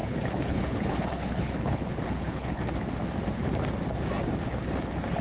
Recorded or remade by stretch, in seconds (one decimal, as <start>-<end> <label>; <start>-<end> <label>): 0.0-2.6 remade; 2.6-5.2 recorded